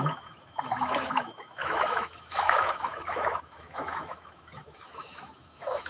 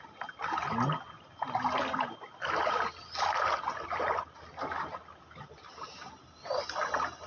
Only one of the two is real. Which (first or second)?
second